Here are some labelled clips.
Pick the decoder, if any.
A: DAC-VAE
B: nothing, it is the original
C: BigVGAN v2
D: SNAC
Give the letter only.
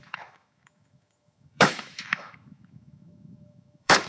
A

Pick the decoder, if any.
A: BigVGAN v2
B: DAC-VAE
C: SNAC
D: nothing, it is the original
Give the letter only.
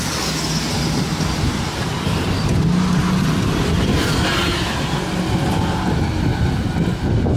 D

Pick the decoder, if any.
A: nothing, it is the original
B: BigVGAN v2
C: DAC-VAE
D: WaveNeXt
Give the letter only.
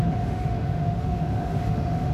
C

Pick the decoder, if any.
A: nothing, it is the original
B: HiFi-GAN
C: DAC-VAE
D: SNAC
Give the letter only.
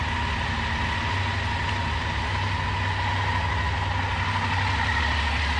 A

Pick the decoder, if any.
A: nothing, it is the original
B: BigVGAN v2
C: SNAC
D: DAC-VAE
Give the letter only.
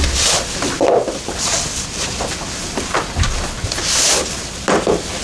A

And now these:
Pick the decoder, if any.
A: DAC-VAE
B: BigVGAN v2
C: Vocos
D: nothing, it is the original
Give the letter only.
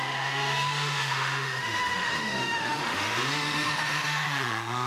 A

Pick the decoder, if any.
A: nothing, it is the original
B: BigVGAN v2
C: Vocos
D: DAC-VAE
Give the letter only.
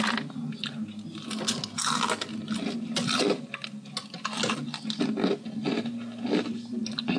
A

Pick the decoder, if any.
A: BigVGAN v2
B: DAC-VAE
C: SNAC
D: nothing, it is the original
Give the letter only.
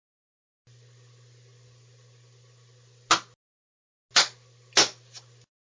D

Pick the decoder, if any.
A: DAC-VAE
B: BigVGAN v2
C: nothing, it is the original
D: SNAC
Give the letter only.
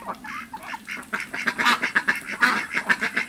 C